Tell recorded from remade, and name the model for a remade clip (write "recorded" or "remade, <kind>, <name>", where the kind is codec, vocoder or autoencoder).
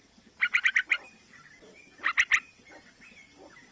recorded